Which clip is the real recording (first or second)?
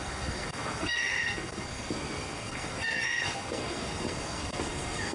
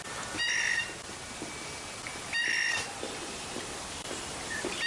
second